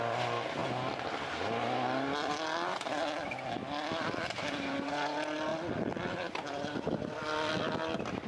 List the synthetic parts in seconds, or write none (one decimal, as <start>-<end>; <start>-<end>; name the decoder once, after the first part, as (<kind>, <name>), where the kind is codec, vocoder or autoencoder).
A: none